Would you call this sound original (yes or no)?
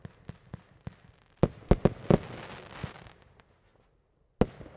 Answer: yes